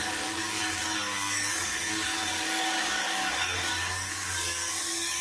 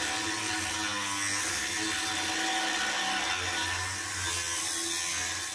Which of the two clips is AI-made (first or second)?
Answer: first